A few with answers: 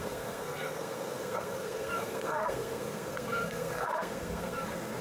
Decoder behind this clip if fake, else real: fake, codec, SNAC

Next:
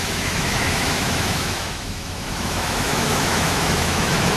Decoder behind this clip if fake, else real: fake, autoencoder, DAC-VAE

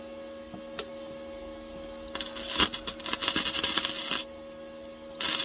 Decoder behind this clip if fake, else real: real